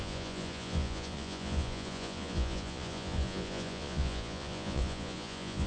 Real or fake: fake